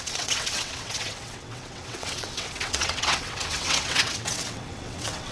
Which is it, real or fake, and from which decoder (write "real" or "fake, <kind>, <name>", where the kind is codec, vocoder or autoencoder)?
fake, vocoder, WaveNeXt